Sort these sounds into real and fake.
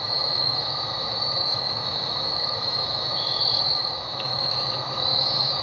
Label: fake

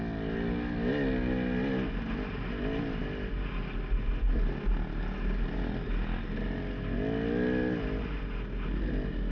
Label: real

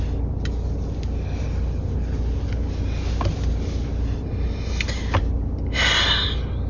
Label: real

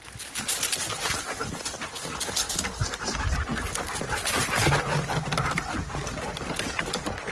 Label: real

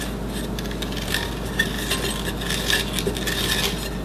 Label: real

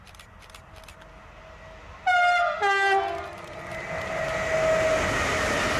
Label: real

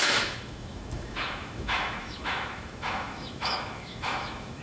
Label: fake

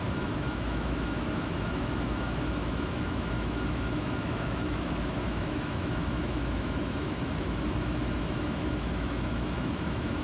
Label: fake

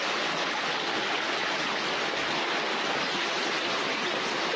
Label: real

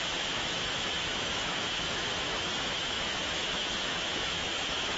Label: fake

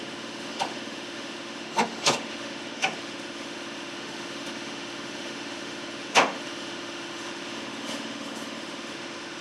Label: fake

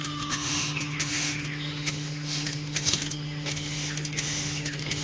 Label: fake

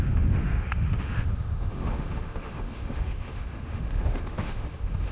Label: fake